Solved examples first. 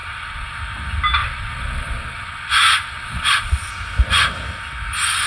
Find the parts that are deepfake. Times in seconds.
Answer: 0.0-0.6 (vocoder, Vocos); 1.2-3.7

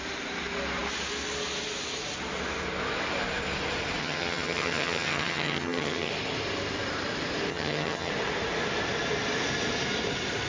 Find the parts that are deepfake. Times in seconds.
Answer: 4.0-6.1 (vocoder, HiFi-GAN); 7.5-8.1

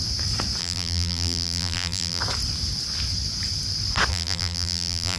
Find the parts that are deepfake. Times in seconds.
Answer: 0.6-2.2 (vocoder, BigVGAN v2); 4.1-5.2

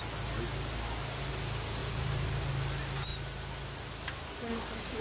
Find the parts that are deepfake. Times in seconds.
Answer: 1.8-2.5 (vocoder, BigVGAN v2)

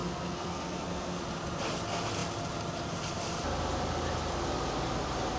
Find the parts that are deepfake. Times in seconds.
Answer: 0.0-1.2 (codec, SNAC)

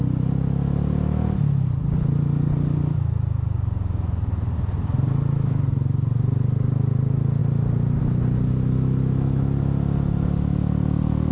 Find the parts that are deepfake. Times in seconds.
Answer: none